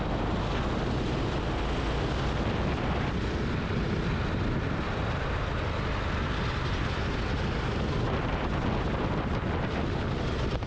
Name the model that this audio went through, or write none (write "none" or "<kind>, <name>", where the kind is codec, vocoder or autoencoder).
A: none